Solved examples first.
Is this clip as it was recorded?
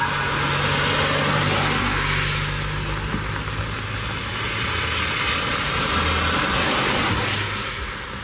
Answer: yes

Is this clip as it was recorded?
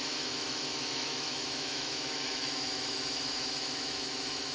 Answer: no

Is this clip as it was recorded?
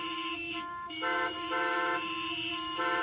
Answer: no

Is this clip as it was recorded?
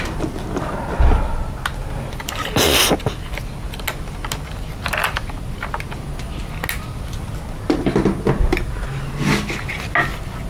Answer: yes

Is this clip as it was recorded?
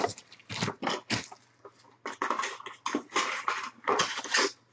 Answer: yes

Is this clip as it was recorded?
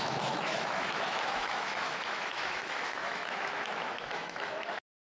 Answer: no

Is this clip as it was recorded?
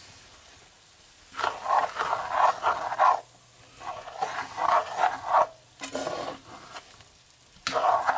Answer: yes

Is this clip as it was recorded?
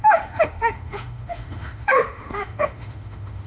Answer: no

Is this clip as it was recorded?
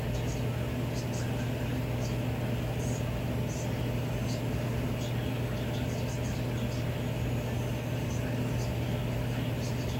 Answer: yes